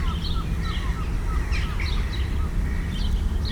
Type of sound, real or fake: real